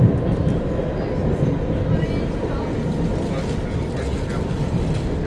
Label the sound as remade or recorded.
recorded